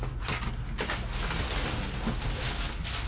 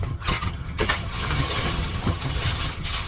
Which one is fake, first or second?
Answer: second